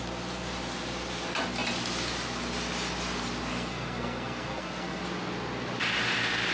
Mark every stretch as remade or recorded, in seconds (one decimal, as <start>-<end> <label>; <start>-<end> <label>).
0.0-3.5 recorded; 3.5-5.0 remade; 5.0-6.5 recorded